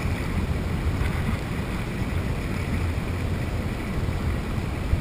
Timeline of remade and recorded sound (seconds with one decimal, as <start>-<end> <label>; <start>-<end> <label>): 0.0-5.0 recorded